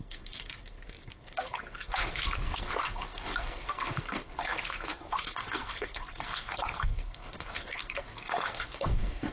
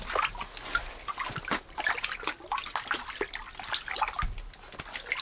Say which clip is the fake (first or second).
first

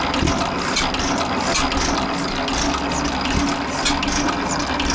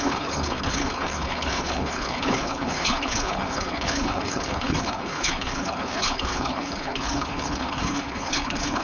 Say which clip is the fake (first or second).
second